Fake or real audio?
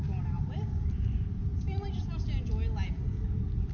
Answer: real